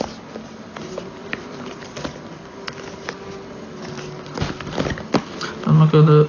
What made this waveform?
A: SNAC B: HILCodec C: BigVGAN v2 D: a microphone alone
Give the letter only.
D